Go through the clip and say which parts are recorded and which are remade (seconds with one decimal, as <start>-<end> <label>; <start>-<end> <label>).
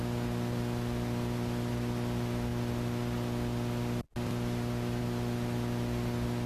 0.0-6.5 recorded